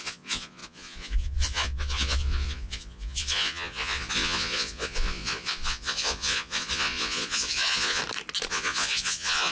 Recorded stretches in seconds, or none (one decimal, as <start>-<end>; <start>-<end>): 8.0-8.5